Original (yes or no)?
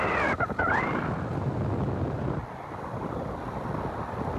yes